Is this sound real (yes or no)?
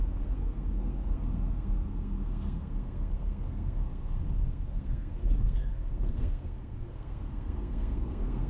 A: no